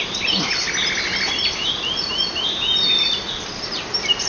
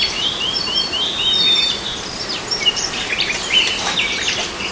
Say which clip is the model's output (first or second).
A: second